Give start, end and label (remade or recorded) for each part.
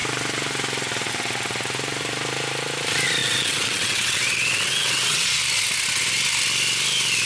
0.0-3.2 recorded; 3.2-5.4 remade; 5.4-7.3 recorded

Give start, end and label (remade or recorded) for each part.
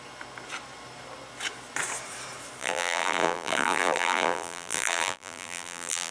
0.0-2.6 recorded; 2.6-6.1 remade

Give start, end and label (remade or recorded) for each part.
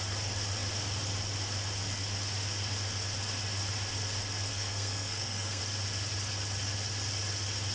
0.0-4.5 recorded; 4.5-5.6 remade; 5.6-7.7 recorded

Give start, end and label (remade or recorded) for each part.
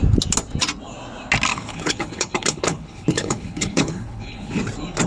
0.0-1.5 recorded; 1.5-4.6 remade; 4.6-5.1 recorded